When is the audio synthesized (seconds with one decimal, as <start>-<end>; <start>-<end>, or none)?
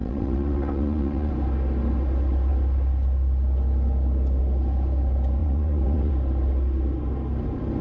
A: 0.0-1.3; 5.4-6.1